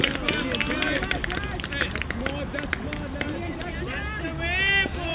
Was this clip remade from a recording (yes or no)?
no